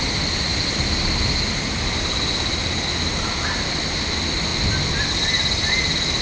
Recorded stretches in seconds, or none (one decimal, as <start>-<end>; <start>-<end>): 0.0-6.2